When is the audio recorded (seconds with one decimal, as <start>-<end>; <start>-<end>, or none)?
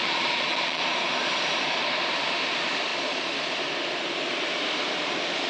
0.8-5.5